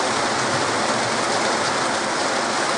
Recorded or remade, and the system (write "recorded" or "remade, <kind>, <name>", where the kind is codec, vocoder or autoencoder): recorded